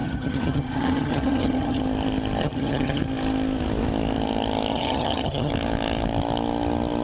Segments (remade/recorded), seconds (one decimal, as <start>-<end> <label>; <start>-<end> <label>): 0.0-1.8 remade; 1.8-2.4 recorded; 2.4-3.0 remade; 3.0-4.7 recorded; 4.7-5.5 remade; 5.5-7.0 recorded